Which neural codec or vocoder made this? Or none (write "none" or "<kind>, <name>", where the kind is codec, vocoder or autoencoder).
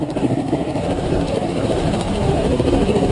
codec, SNAC